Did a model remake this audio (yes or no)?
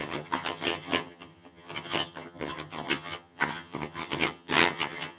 yes